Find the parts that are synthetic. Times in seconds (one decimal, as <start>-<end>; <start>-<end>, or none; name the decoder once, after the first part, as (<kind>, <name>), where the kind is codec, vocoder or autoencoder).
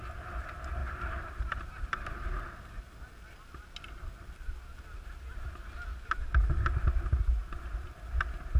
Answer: 0.8-3.0 (vocoder, BigVGAN v2); 5.9-6.7